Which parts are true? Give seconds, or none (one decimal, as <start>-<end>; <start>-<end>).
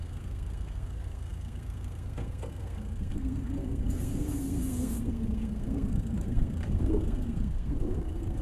none